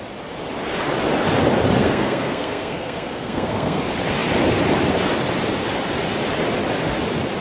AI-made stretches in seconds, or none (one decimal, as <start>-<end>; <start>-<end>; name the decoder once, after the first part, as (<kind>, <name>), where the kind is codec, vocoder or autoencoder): 1.8-3.8 (codec, SNAC)